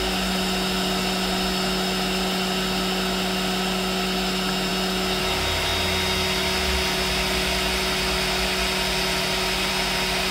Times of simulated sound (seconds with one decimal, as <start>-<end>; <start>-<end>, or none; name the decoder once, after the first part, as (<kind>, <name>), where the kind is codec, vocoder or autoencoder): none